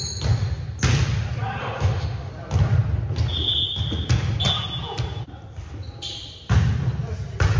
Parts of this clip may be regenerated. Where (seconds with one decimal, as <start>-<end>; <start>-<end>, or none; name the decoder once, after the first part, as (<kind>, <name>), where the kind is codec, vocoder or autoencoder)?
1.6-2.3 (autoencoder, DAC-VAE)